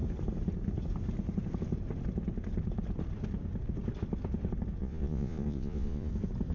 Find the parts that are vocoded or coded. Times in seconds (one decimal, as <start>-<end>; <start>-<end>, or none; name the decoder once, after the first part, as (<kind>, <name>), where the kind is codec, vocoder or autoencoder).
4.8-6.1 (vocoder, Vocos)